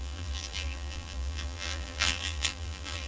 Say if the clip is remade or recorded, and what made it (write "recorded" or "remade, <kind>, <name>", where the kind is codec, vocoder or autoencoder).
remade, vocoder, BigVGAN v2